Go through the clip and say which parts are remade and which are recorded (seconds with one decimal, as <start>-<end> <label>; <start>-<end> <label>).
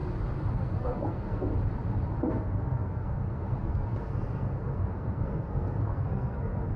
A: 0.0-0.5 recorded; 0.5-1.5 remade; 1.5-2.2 recorded; 2.2-6.8 remade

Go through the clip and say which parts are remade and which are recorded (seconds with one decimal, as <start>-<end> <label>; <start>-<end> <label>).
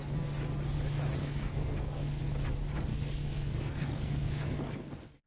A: 0.0-1.2 recorded; 1.2-2.2 remade; 2.2-2.9 recorded; 2.9-5.3 remade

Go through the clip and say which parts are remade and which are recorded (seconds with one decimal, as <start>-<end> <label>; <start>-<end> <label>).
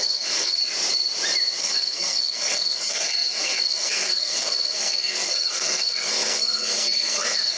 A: 0.0-0.6 remade; 0.6-1.6 recorded; 1.6-7.6 remade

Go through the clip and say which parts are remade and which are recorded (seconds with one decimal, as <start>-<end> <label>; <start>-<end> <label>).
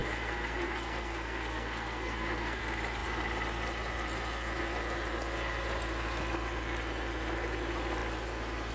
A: 0.0-2.6 remade; 2.6-8.7 recorded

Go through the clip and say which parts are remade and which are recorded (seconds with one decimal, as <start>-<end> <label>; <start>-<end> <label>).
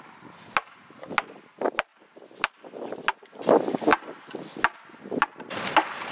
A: 0.0-6.1 recorded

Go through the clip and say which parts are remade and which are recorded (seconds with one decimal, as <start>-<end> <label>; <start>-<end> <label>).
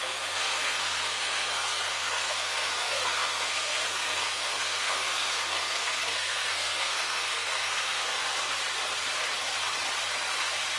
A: 0.0-8.2 remade; 8.2-10.8 recorded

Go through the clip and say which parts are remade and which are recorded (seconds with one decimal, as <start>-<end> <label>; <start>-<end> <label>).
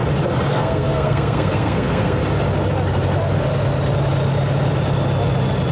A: 0.0-0.5 recorded; 0.5-2.2 remade; 2.2-5.7 recorded